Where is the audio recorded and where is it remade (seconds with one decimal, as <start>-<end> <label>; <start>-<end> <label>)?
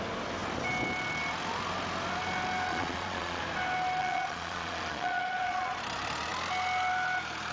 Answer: 0.0-2.7 recorded; 2.7-3.4 remade; 3.4-4.0 recorded; 4.0-5.8 remade; 5.8-7.5 recorded